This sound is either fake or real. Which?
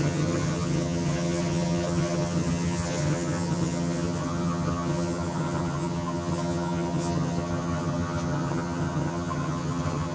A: fake